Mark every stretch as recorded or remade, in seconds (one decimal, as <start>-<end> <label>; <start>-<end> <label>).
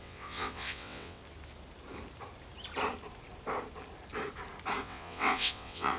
0.0-1.2 remade; 1.2-4.8 recorded; 4.8-6.0 remade